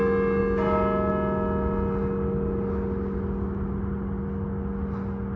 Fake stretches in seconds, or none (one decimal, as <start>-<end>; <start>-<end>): none